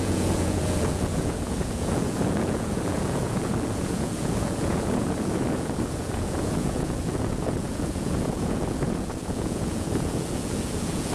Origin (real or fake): fake